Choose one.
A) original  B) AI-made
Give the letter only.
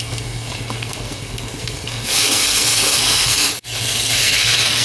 B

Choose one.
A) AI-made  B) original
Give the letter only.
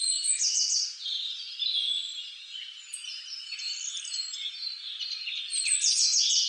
B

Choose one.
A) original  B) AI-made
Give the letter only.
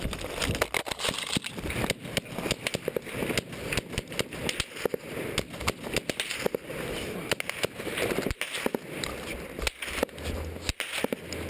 A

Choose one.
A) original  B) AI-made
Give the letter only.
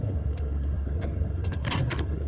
B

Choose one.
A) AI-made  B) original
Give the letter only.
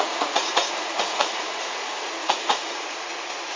A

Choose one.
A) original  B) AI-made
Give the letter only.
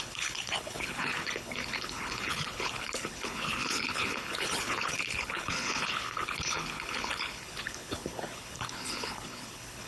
B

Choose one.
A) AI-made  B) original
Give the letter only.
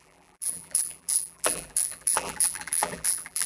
A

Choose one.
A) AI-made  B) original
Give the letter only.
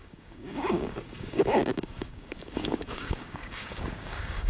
A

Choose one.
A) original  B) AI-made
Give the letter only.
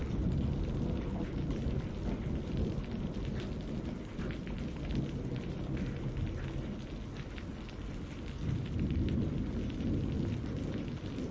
A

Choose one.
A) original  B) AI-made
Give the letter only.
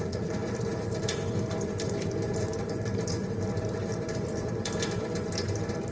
B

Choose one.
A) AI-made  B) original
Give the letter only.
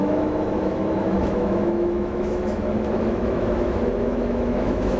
A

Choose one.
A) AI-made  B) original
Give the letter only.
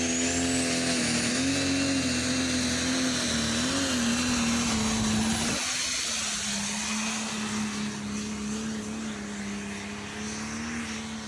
B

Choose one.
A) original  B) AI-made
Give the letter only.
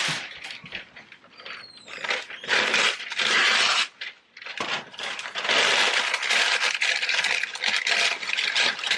A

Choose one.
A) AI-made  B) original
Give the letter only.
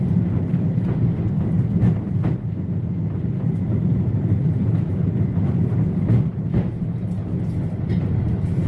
B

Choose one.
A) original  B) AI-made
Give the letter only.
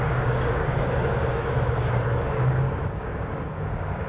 B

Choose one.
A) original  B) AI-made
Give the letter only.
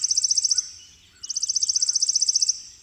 A